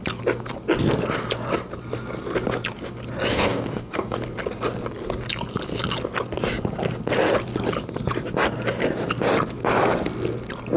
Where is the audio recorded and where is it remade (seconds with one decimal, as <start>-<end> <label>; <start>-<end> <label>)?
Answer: 0.0-3.3 recorded; 3.3-4.2 remade; 4.2-10.8 recorded